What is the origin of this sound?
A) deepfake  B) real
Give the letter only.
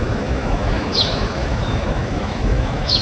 A